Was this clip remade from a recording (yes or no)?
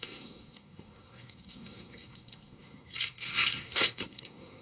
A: yes